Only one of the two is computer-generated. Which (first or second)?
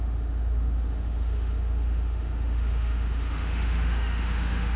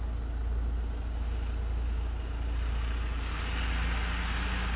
first